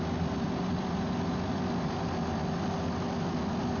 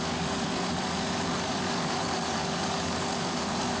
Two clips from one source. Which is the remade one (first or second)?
second